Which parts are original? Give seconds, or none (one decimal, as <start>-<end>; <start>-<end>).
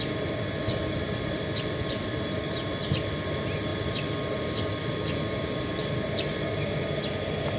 0.0-7.6